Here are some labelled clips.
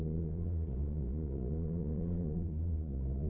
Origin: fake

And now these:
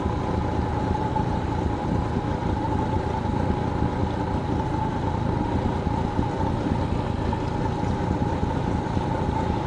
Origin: real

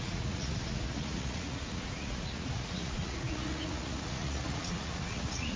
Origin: fake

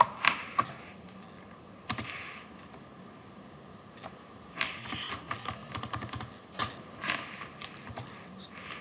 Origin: real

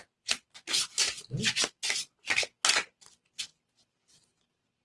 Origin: real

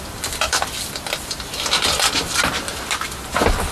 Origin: real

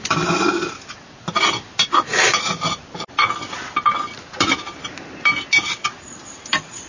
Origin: real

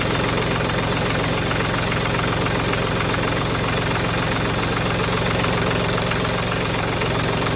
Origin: real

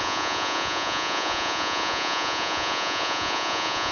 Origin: fake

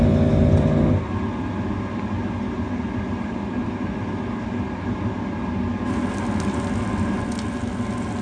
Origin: real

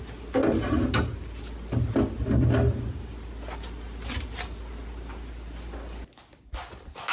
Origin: real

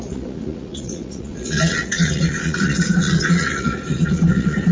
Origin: fake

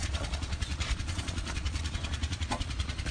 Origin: fake